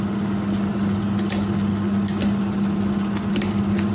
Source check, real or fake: real